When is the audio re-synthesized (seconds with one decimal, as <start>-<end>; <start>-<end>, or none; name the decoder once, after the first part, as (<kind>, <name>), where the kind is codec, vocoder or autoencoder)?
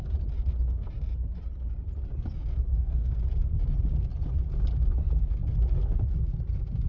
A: 2.7-3.2 (codec, SNAC)